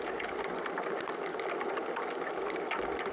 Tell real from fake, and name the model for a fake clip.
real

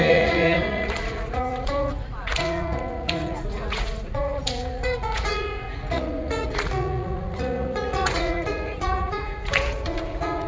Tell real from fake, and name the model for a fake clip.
fake, vocoder, Vocos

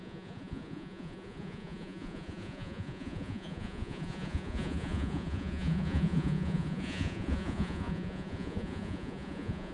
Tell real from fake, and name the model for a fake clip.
fake, vocoder, Vocos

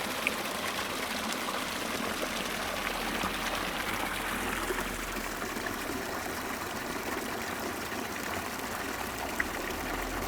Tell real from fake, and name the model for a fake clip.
fake, vocoder, BigVGAN v2